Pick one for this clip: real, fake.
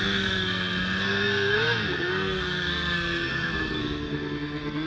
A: fake